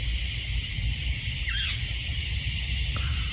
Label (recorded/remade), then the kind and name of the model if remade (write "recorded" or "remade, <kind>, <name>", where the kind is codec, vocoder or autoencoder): recorded